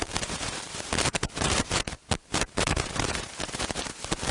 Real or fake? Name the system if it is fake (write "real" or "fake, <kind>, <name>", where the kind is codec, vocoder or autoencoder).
fake, vocoder, BigVGAN v2